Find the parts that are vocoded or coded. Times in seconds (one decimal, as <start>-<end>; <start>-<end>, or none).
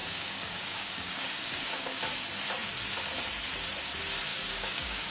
0.0-2.0; 4.3-5.1